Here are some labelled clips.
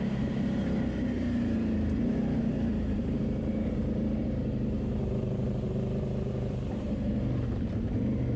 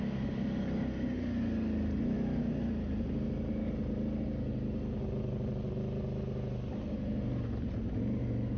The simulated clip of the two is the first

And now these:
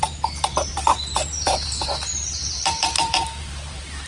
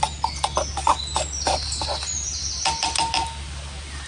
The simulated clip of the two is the first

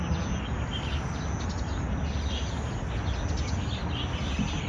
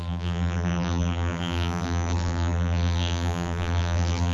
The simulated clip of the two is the second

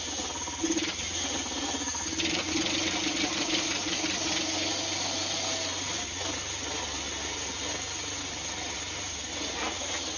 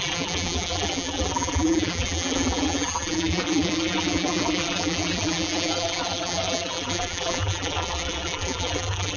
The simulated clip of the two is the second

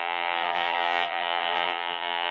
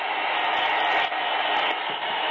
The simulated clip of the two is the first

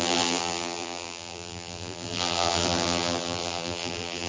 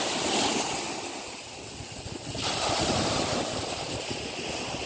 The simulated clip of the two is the first